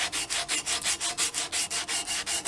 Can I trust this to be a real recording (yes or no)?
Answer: yes